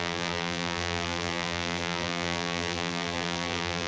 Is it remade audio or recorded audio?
remade